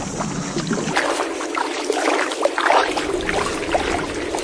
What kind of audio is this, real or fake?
real